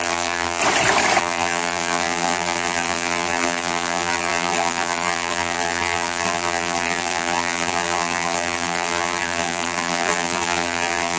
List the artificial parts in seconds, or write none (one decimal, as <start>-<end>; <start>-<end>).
0.0-0.6; 1.2-11.2